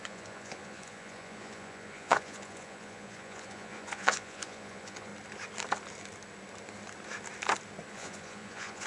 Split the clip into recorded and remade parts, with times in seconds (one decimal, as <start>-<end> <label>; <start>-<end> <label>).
0.0-5.1 remade; 5.1-7.9 recorded; 7.9-8.9 remade